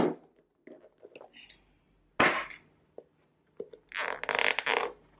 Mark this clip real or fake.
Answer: real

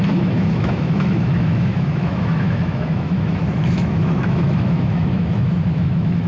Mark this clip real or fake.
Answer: fake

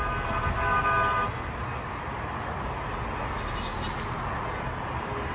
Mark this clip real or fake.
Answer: real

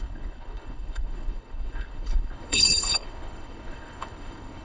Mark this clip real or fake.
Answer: fake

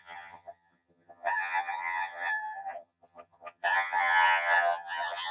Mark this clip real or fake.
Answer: fake